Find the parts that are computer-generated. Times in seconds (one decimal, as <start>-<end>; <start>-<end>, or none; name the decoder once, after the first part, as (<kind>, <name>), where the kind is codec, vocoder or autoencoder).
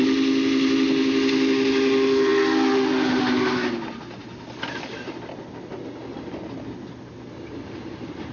none